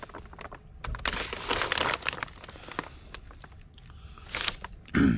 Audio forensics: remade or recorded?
recorded